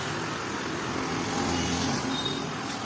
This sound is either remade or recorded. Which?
recorded